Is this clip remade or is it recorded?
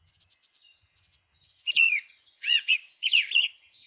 remade